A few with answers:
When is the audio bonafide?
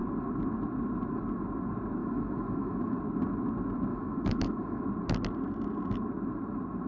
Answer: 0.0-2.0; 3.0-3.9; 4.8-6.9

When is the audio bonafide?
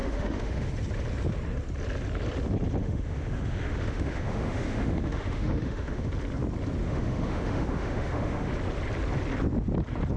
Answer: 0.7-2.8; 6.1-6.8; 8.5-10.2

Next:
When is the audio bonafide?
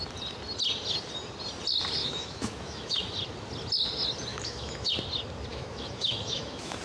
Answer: 0.0-2.0; 3.0-4.3; 4.9-5.5